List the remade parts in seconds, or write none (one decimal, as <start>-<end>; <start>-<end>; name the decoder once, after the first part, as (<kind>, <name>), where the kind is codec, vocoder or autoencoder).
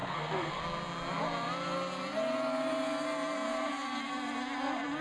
0.0-0.6 (codec, SNAC)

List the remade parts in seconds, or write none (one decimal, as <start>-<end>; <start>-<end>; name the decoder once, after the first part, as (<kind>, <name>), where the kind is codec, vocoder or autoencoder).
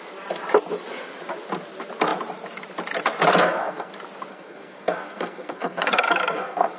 3.4-3.9 (codec, SNAC); 4.3-6.8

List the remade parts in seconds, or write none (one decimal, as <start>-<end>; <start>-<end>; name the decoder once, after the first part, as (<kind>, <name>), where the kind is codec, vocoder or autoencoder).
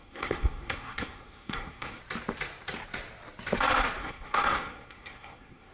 0.0-2.0 (codec, SNAC); 4.0-5.7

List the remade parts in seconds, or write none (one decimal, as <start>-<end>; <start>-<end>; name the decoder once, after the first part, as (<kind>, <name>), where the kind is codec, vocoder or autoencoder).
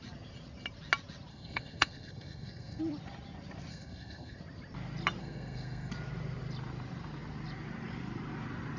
1.3-2.8 (codec, SNAC); 3.7-4.4; 5.2-5.9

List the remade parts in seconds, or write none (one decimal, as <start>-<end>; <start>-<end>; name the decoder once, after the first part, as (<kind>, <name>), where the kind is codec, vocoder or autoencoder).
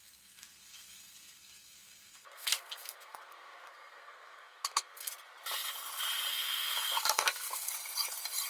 0.0-5.1 (codec, SNAC); 6.3-7.7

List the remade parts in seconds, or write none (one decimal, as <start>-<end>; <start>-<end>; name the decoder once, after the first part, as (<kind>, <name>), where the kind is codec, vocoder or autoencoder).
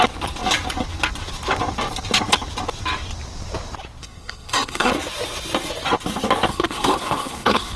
4.0-4.9 (codec, SNAC); 6.5-7.8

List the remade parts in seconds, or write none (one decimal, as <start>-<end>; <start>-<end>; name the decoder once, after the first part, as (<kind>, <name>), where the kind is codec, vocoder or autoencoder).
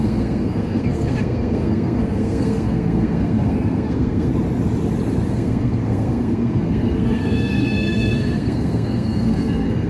0.0-4.3 (codec, SNAC); 5.3-9.9